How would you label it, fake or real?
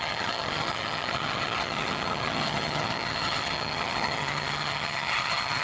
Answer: fake